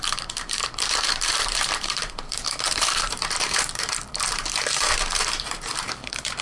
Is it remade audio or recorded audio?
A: remade